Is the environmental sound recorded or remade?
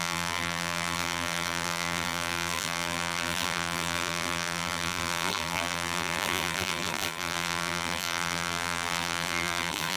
remade